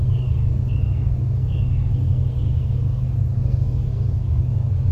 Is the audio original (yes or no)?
no